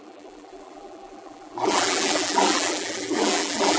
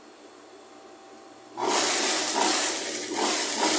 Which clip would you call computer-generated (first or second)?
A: first